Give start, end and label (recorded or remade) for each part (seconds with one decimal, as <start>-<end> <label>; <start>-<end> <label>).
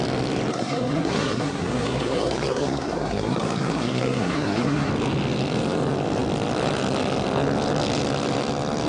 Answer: 0.0-0.5 recorded; 0.5-4.9 remade; 4.9-8.9 recorded